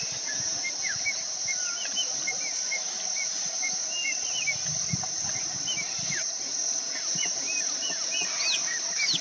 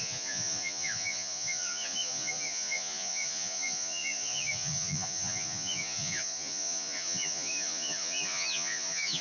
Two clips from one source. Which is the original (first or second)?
first